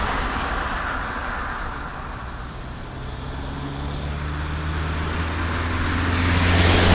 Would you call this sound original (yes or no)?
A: yes